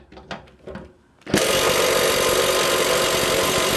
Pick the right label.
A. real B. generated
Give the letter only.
A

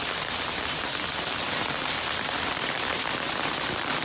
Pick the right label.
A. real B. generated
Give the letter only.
B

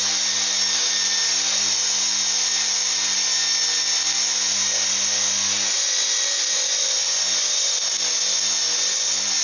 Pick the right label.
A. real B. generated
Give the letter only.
A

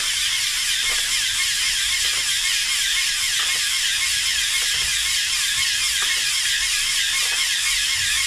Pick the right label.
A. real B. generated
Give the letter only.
A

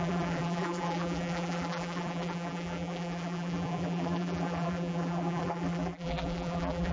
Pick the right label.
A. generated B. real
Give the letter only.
A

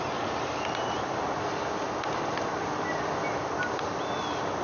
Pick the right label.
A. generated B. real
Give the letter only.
B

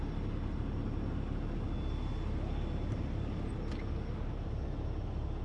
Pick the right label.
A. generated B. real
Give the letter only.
B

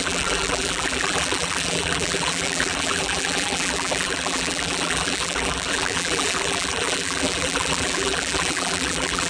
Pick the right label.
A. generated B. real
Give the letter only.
A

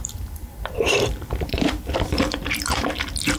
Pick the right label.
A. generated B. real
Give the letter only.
A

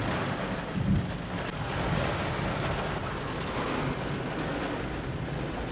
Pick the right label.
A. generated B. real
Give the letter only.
B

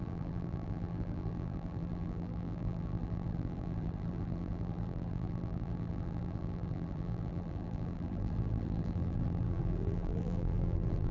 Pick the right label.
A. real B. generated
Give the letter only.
B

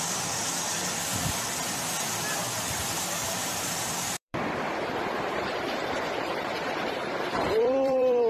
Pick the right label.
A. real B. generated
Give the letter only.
B